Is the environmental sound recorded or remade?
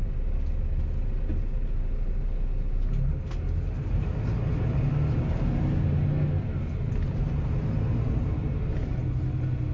recorded